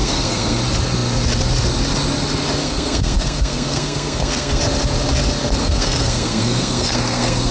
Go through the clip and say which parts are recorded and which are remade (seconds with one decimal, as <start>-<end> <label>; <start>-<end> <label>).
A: 0.0-0.6 remade; 0.6-2.6 recorded; 2.6-4.6 remade; 4.6-5.6 recorded; 5.6-7.5 remade